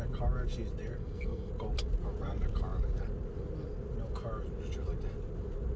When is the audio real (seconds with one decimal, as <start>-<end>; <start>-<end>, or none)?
0.0-1.0; 1.5-5.8

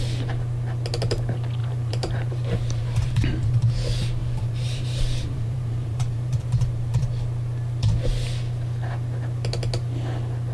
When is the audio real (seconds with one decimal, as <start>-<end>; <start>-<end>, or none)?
0.0-1.6; 3.7-4.2; 7.2-10.5

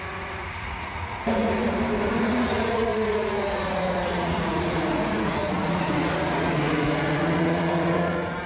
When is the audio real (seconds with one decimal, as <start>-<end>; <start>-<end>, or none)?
1.6-2.1